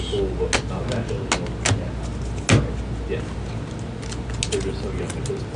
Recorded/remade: recorded